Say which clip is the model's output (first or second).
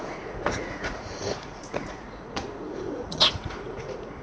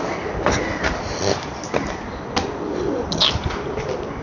first